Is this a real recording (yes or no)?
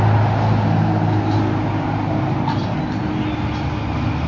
yes